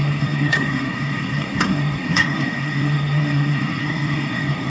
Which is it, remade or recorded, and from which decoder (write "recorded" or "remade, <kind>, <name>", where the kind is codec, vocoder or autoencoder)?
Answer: remade, codec, SNAC